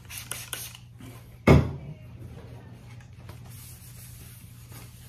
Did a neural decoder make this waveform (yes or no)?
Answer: no